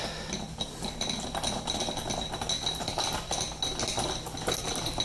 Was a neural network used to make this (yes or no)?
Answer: no